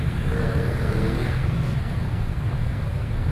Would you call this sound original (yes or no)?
no